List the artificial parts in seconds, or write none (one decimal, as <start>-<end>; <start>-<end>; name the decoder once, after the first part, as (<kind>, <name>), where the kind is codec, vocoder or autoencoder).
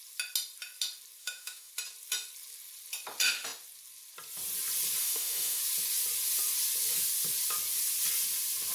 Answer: 1.2-1.7 (autoencoder, DAC-VAE); 5.0-5.6